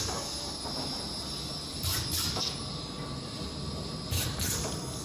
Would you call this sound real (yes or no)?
yes